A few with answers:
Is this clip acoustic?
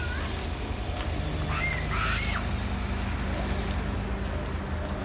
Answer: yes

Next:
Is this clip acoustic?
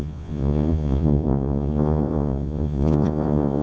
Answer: no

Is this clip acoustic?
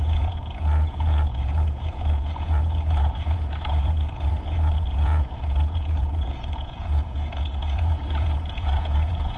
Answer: no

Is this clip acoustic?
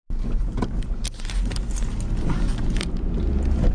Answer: yes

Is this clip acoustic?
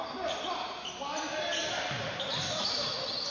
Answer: yes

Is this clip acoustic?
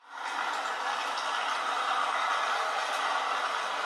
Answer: yes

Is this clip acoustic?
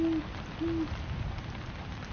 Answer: yes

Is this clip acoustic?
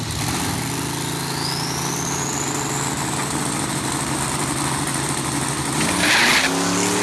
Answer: yes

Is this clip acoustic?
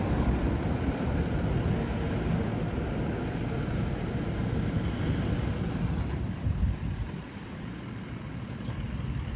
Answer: yes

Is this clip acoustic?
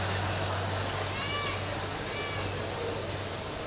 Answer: yes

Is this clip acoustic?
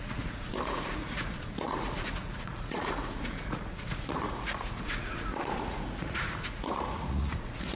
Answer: no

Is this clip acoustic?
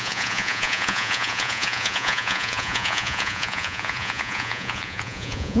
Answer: no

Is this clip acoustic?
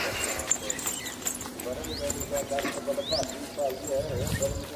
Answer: yes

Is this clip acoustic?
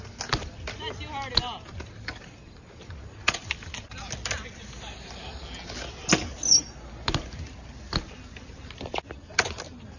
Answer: yes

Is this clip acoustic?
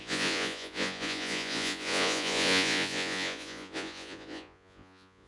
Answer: no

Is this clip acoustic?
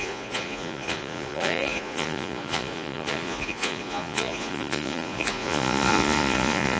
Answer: no